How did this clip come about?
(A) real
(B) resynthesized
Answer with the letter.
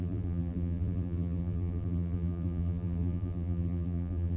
B